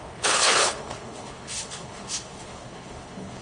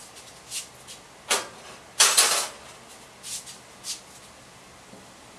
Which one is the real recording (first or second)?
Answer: second